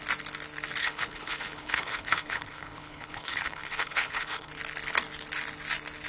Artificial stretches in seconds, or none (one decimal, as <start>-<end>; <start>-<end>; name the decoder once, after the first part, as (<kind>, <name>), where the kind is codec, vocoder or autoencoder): 0.8-4.5 (codec, HILCodec)